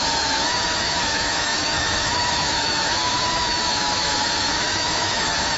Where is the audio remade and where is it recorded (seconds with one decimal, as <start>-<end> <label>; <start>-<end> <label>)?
0.0-5.6 remade